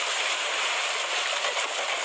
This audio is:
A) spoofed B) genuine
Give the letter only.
B